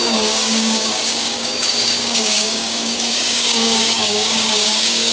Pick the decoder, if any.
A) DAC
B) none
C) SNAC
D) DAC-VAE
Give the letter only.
A